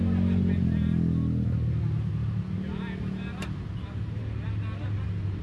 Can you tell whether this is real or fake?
real